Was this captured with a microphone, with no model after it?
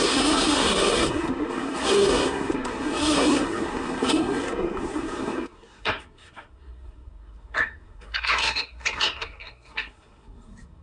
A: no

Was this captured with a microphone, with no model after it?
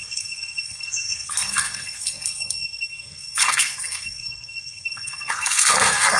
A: no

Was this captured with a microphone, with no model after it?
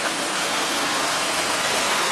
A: no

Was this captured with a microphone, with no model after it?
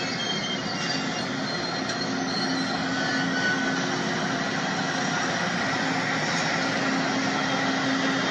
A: yes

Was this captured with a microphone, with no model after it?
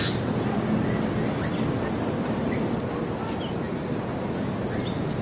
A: yes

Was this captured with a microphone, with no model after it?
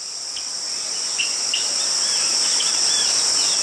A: yes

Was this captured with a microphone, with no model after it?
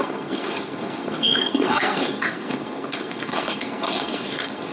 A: no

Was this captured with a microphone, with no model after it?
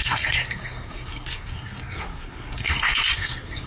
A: no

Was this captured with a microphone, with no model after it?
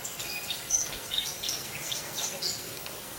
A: no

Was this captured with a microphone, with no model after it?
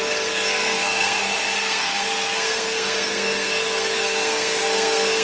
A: no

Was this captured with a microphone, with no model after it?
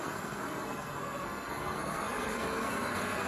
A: no